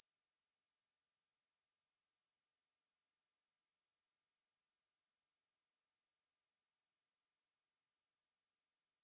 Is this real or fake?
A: real